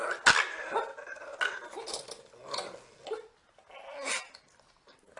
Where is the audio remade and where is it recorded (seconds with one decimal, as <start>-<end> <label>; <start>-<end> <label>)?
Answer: 0.0-5.2 recorded